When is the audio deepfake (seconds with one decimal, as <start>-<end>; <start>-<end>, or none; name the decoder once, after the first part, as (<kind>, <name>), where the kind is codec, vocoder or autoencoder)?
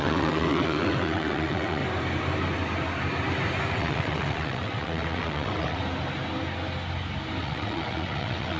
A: 0.0-1.8 (vocoder, WaveNeXt); 3.7-5.8; 7.4-8.6